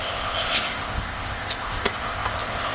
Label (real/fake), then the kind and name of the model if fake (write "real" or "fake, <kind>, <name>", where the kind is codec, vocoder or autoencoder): fake, codec, ZipCodec